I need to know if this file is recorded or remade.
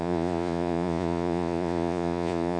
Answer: remade